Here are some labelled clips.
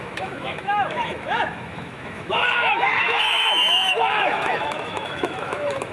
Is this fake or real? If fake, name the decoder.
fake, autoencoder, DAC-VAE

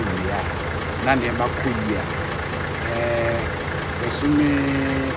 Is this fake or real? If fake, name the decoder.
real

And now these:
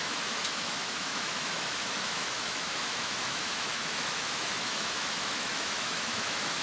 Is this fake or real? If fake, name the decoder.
fake, autoencoder, DAC-VAE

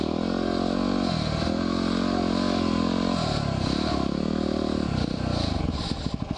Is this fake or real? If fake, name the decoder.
real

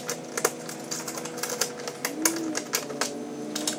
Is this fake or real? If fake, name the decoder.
real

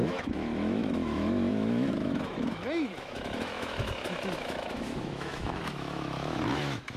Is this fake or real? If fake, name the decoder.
fake, autoencoder, DAC-VAE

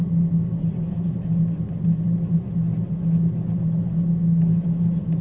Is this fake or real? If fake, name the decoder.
real